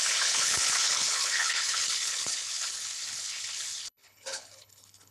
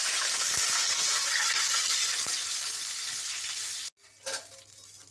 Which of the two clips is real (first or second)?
second